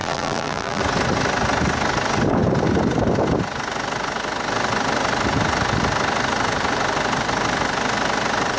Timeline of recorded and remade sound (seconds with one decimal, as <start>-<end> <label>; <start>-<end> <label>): 0.0-0.8 remade; 0.8-8.6 recorded